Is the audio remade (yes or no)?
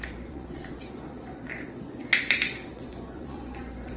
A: yes